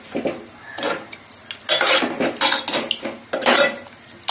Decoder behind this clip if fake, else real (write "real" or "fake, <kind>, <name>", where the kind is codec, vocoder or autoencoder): real